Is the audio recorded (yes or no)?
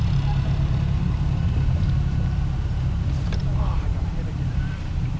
no